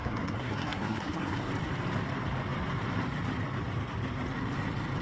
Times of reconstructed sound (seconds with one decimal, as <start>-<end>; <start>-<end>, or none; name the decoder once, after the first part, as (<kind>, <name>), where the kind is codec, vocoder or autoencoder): 0.0-1.5 (codec, SNAC)